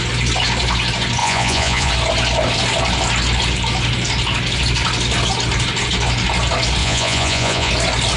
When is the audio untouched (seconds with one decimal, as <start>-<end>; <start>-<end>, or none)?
0.0-1.2; 1.9-6.8; 7.7-8.2